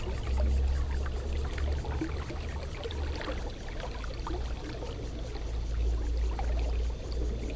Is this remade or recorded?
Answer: recorded